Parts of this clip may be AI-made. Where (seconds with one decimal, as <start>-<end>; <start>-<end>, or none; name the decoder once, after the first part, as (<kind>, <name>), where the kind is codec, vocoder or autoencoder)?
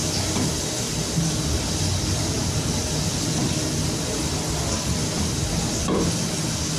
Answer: none